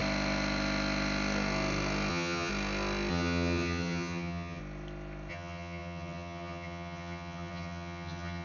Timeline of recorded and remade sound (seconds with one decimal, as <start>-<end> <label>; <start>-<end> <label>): 0.0-2.1 recorded; 2.1-2.5 remade; 2.5-3.1 recorded; 3.1-4.6 remade; 4.6-5.3 recorded; 5.3-8.4 remade